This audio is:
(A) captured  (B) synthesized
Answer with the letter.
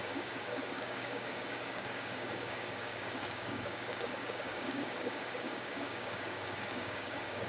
B